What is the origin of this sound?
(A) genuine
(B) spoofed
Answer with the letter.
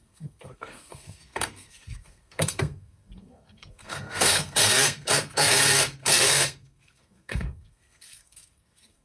B